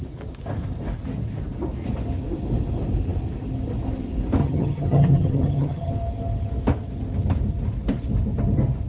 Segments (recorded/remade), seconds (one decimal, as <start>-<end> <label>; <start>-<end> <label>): 0.0-4.4 recorded; 4.4-5.9 remade; 5.9-8.9 recorded